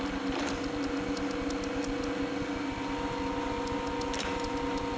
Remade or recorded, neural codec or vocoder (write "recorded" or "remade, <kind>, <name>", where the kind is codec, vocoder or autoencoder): recorded